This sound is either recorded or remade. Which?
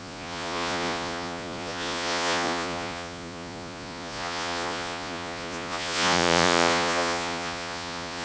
remade